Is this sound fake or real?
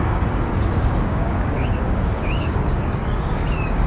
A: fake